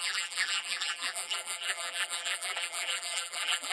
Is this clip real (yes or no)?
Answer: no